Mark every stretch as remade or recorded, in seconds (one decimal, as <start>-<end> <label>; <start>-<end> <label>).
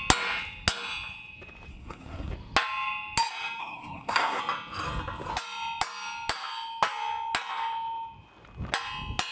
0.0-1.7 recorded; 1.7-2.3 remade; 2.3-3.6 recorded; 3.6-4.4 remade; 4.4-9.3 recorded